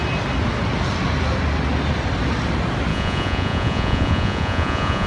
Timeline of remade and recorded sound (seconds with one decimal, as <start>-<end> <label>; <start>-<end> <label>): 0.0-2.9 recorded; 2.9-5.1 remade